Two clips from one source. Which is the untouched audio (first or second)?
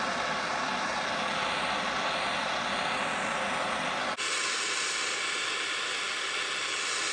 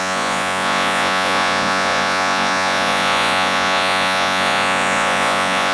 first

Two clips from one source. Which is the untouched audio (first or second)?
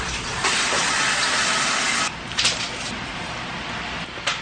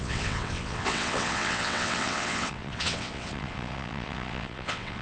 first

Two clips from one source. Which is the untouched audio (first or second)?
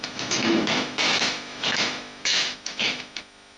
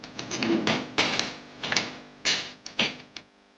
second